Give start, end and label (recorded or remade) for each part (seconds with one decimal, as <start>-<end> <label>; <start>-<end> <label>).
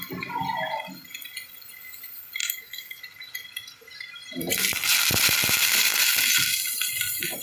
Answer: 0.0-2.4 recorded; 2.4-3.0 remade; 3.0-7.4 recorded